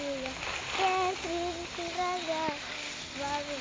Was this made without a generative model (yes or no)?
yes